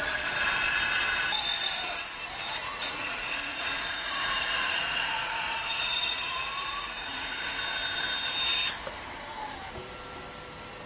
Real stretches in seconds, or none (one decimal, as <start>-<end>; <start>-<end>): 0.0-2.6; 7.6-10.9